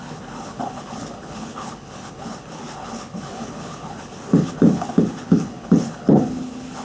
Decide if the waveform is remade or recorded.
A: remade